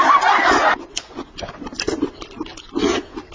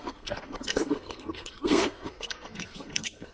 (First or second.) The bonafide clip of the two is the first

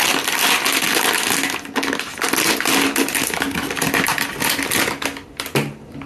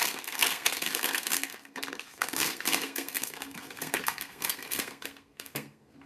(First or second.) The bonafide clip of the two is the first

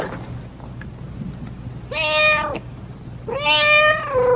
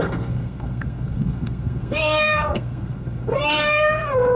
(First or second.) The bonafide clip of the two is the first